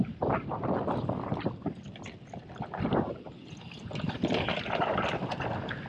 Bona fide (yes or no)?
yes